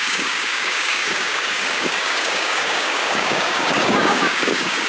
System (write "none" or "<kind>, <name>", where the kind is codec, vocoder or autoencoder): codec, DAC